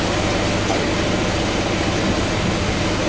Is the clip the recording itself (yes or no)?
yes